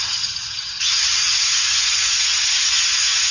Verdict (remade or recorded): remade